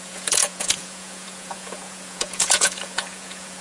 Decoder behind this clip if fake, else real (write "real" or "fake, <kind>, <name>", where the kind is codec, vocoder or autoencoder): fake, vocoder, Vocos